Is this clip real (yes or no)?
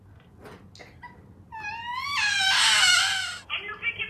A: yes